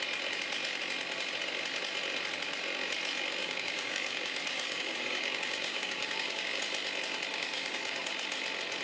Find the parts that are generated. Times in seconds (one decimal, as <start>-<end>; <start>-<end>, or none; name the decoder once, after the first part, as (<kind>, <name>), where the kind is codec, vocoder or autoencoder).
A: 3.4-6.6 (codec, DAC); 7.3-8.0